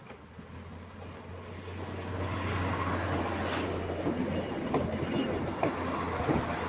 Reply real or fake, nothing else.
real